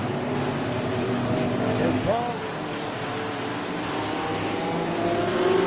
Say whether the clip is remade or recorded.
recorded